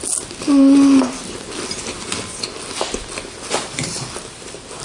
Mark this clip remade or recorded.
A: recorded